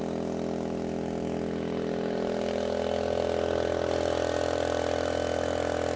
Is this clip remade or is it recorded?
recorded